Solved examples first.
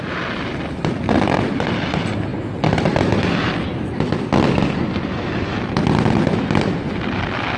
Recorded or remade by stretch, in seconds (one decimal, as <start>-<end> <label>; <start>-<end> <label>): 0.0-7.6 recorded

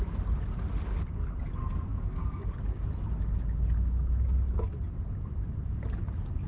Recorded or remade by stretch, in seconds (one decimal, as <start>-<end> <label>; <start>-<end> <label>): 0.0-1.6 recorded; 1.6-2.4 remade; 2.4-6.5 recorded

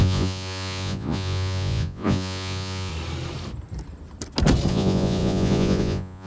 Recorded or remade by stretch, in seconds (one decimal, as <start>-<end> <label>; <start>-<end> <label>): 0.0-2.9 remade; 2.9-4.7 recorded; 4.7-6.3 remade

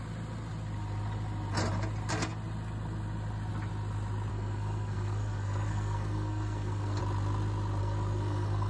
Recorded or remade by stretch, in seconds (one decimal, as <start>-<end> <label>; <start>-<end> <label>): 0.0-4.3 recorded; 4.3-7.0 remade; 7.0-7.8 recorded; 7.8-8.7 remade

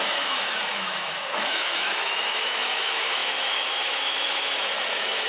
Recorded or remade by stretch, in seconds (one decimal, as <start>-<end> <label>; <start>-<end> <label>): 0.0-5.3 remade

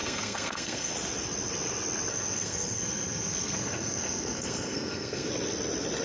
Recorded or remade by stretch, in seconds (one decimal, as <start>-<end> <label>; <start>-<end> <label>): 0.0-0.9 remade; 0.9-2.1 recorded; 2.1-5.3 remade; 5.3-6.0 recorded